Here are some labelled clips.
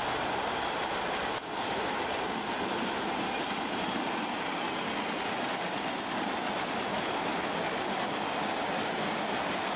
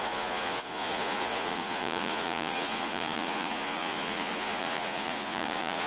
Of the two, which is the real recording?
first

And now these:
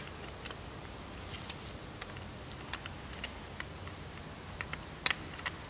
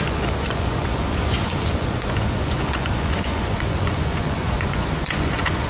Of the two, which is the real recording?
first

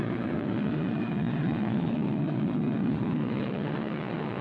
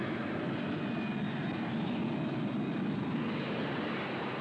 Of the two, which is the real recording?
second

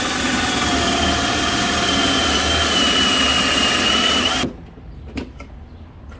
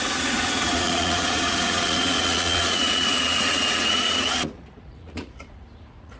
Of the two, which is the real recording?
first